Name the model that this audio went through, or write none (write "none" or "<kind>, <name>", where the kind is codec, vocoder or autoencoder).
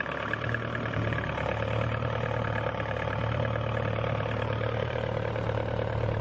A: vocoder, BigVGAN v2